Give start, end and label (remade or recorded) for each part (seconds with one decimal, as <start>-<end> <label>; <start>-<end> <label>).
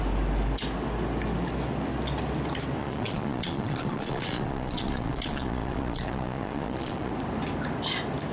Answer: 0.0-2.8 recorded; 2.8-7.1 remade; 7.1-8.3 recorded